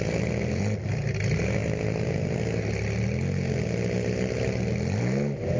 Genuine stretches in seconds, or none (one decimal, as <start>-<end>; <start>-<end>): 0.0-5.6